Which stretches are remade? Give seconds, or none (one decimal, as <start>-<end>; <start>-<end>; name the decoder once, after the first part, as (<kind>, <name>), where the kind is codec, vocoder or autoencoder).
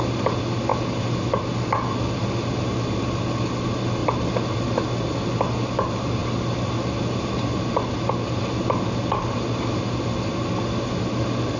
none